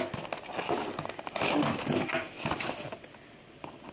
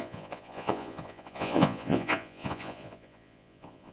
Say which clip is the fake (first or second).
second